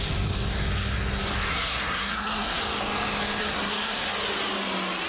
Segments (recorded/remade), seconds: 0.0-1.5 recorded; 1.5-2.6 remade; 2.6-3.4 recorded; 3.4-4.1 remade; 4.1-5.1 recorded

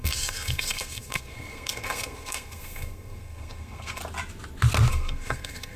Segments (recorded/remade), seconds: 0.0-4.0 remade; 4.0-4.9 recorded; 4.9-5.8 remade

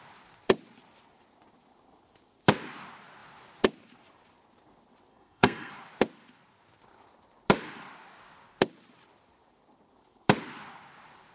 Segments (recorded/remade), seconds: 0.0-5.1 recorded; 5.1-5.7 remade; 5.7-11.3 recorded